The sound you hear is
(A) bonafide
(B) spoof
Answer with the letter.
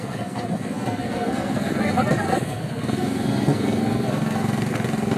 B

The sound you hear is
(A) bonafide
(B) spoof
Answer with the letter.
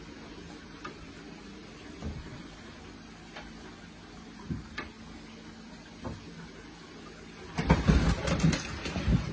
A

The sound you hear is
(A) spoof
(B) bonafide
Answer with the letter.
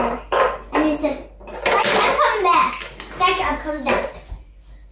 B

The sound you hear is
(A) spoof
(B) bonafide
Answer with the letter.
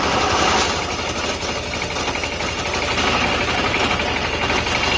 B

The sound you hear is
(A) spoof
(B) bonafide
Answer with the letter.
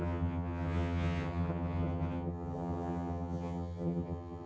A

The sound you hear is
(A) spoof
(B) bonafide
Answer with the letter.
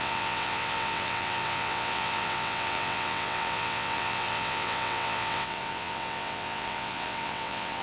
A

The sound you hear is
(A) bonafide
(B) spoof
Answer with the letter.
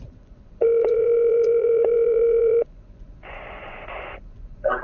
B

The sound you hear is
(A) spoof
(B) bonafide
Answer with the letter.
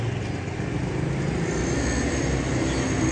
B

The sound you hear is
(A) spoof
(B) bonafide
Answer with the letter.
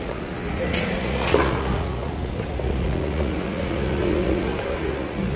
A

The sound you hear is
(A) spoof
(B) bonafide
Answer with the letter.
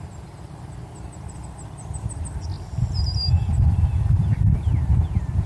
A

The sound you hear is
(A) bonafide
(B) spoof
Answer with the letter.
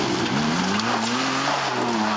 A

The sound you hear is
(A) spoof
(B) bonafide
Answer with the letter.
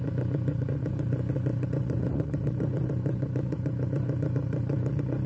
A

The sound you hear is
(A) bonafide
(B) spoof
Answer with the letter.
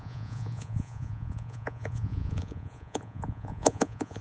B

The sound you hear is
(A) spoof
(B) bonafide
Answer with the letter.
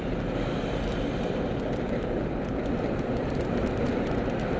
A